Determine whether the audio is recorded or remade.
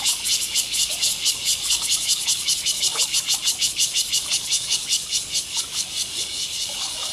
remade